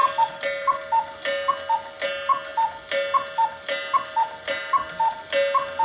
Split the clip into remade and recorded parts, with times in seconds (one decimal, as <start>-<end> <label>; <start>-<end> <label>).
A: 0.0-5.8 recorded

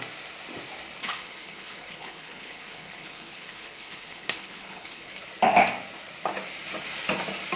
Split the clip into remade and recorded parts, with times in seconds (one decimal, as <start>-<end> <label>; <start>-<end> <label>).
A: 0.0-1.0 recorded; 1.0-5.2 remade; 5.2-7.6 recorded

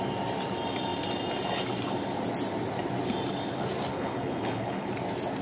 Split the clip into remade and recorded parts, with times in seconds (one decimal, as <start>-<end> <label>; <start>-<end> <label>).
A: 0.0-3.9 recorded; 3.9-4.9 remade; 4.9-5.4 recorded

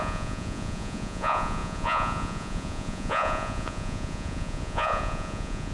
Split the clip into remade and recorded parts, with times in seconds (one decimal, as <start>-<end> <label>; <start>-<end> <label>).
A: 0.0-5.7 remade

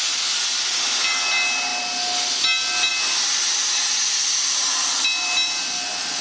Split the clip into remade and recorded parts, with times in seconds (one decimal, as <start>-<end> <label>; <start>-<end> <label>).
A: 0.0-6.2 recorded

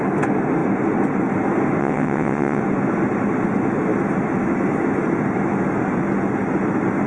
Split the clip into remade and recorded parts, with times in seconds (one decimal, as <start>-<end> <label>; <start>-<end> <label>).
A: 0.0-1.8 recorded; 1.8-2.6 remade; 2.6-7.1 recorded

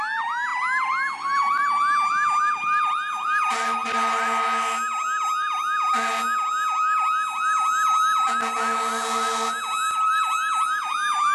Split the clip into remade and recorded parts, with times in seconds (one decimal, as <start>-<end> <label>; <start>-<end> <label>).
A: 0.0-11.3 recorded

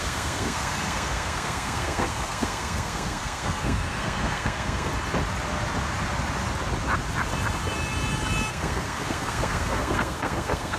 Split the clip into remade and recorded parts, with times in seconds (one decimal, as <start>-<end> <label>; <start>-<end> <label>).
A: 0.0-4.9 remade; 4.9-8.5 recorded; 8.5-10.8 remade